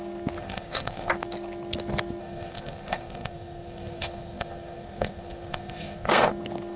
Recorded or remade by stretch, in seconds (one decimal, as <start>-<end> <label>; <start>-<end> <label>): 0.0-0.4 recorded; 0.4-1.1 remade; 1.1-2.2 recorded; 2.2-6.3 remade; 6.3-6.8 recorded